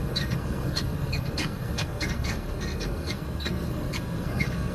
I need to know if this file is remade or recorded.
remade